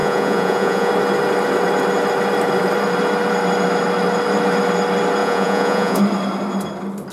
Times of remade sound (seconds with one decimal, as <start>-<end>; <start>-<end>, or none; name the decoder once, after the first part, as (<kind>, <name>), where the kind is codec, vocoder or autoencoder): 0.0-0.9 (vocoder, Vocos); 5.2-6.0